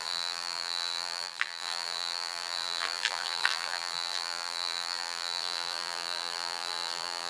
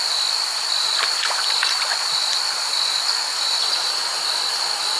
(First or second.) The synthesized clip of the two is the first